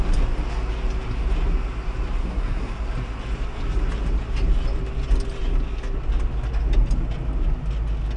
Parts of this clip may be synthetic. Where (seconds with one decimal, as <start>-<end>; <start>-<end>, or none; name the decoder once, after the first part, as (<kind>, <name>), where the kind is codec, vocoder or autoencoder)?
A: 2.2-2.7 (codec, SNAC)